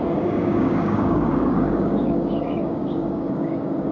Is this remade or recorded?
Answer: remade